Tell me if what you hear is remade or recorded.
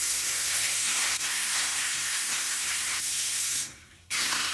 remade